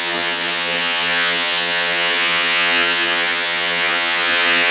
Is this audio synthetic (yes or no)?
yes